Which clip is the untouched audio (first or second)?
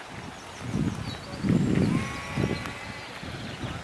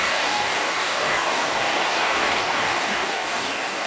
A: first